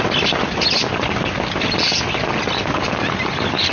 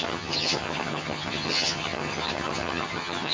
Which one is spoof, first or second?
second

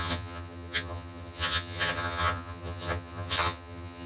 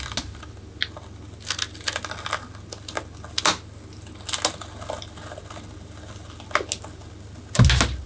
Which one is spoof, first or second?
first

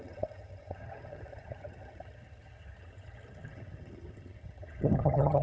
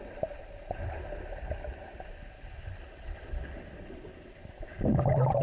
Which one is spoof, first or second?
first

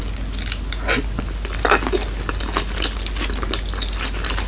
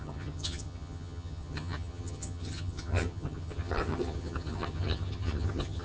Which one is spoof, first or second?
second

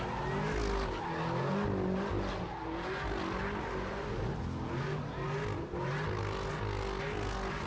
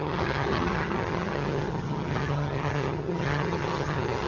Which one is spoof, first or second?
second